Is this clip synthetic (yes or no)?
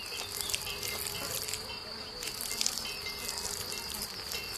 no